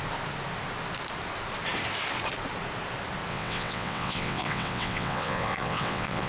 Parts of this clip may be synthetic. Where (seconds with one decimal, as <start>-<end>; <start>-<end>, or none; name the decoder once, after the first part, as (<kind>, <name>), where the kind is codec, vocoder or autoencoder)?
3.3-6.3 (vocoder, WaveNeXt)